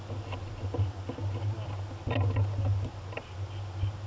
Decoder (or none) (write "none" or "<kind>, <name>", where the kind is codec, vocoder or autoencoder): none